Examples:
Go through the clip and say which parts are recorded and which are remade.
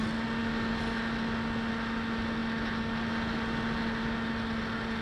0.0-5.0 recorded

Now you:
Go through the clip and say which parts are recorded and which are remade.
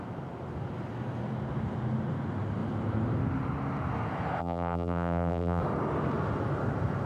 0.0-4.4 recorded; 4.4-5.6 remade; 5.6-7.1 recorded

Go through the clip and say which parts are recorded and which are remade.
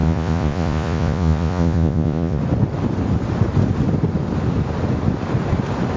0.0-2.4 remade; 2.4-6.0 recorded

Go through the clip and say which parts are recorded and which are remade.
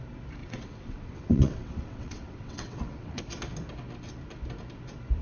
0.0-0.4 recorded; 0.4-3.2 remade; 3.2-5.2 recorded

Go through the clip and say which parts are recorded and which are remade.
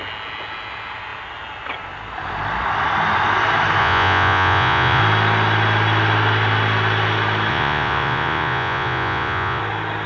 0.0-3.8 recorded; 3.8-5.0 remade; 5.0-7.5 recorded; 7.5-9.6 remade; 9.6-10.1 recorded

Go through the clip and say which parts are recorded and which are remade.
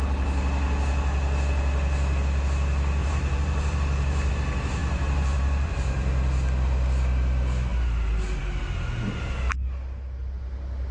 0.0-3.0 recorded; 3.0-4.3 remade; 4.3-4.8 recorded; 4.8-5.7 remade; 5.7-10.9 recorded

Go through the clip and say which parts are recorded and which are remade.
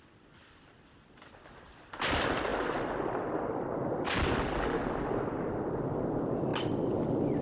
0.0-6.5 remade; 6.5-7.4 recorded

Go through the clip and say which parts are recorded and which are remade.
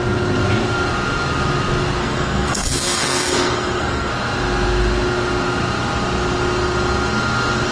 0.0-2.0 recorded; 2.0-4.1 remade; 4.1-7.7 recorded